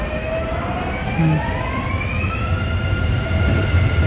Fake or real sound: real